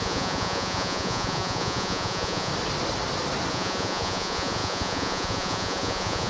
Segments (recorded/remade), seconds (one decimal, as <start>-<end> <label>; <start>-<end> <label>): 0.0-2.5 remade; 2.5-3.5 recorded; 3.5-6.3 remade